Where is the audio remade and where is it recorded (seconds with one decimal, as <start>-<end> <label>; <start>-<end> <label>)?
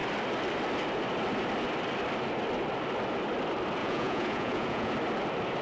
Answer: 0.0-3.8 recorded; 3.8-4.9 remade; 4.9-5.6 recorded